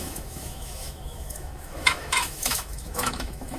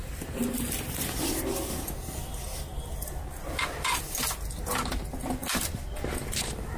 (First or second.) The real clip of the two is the second